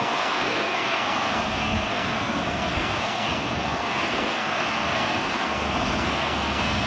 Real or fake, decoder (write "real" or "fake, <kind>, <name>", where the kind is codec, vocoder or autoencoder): fake, codec, SNAC